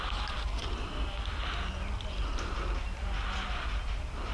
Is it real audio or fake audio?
real